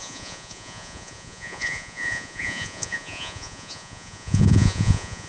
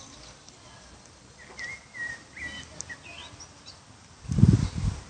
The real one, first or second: second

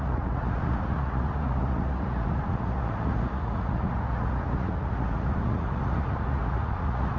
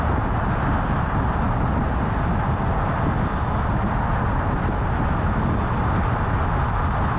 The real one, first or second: second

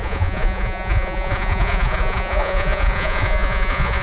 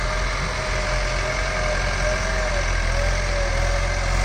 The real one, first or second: second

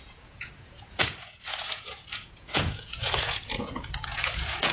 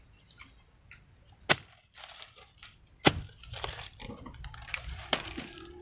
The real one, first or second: second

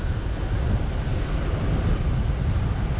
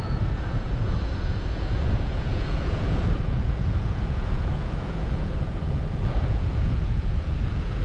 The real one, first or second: first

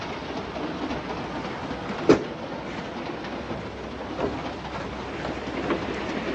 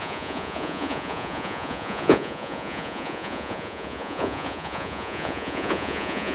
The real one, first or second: first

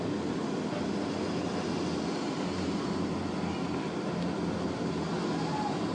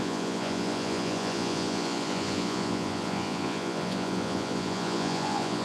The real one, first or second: first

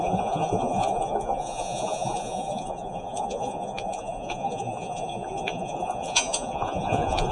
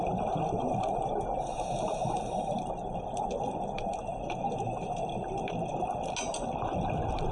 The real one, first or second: second